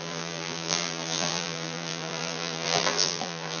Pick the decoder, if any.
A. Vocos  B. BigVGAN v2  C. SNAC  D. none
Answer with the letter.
B